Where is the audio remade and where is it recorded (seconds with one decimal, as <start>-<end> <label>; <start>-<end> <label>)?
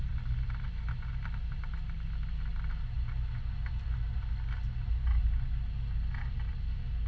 0.0-7.1 recorded